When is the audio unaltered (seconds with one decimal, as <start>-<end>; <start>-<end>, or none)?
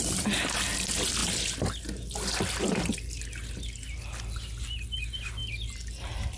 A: 0.0-6.4